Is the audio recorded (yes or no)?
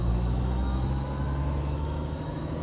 no